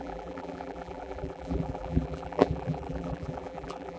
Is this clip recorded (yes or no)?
no